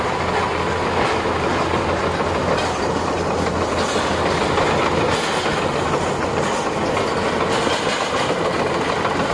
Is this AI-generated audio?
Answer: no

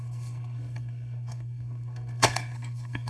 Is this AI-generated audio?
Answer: yes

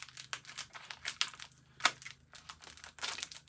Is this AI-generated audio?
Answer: no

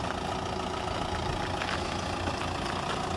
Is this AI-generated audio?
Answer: no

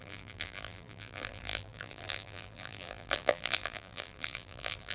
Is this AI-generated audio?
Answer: yes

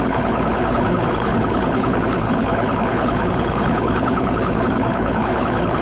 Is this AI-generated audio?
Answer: yes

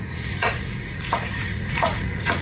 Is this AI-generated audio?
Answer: yes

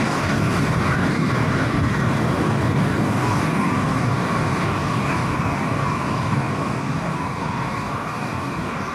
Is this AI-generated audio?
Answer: yes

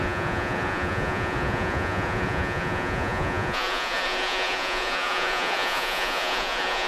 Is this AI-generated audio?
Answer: yes